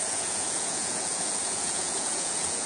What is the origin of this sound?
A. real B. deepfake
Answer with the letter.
B